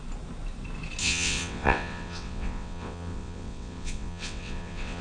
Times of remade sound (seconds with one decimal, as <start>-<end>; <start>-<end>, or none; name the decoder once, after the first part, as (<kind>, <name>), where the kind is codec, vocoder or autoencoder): 1.0-5.0 (vocoder, WaveNeXt)